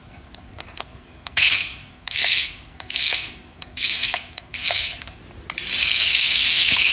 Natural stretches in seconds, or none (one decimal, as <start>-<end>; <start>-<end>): 5.2-5.8